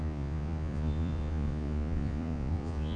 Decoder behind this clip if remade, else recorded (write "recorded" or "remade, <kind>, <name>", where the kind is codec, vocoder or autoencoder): remade, vocoder, Vocos